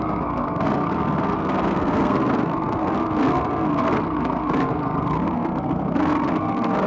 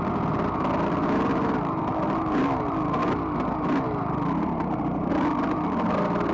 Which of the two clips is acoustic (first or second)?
second